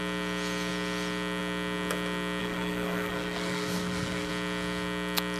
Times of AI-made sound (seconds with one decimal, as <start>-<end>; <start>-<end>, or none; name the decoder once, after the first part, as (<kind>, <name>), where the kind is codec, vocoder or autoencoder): 2.4-4.3 (codec, SNAC)